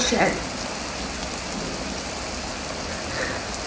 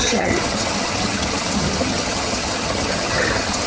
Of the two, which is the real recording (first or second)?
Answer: first